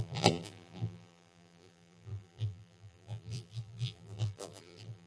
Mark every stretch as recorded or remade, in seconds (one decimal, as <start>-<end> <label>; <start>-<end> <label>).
0.0-5.1 remade